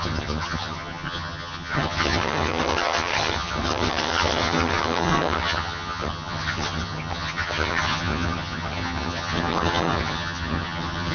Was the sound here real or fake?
fake